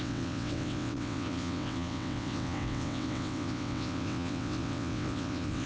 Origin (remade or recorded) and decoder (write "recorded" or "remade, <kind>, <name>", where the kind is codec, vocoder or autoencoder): remade, vocoder, WaveNeXt